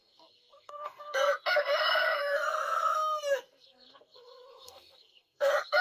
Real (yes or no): no